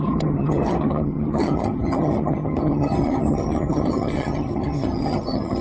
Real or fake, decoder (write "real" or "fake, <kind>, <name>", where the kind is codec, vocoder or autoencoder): fake, vocoder, HiFi-GAN